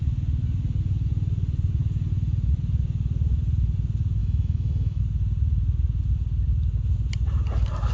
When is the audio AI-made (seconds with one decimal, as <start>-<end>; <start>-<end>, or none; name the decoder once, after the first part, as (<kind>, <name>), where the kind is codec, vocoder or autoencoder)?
4.2-5.0 (autoencoder, DAC-VAE)